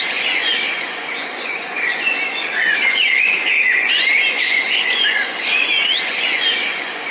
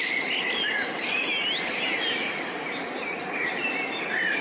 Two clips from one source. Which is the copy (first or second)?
first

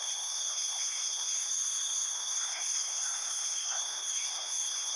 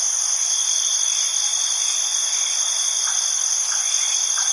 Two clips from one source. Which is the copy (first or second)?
first